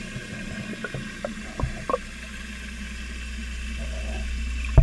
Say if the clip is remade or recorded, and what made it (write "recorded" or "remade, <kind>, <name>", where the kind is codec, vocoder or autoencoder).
recorded